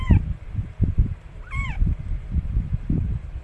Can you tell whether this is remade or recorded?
remade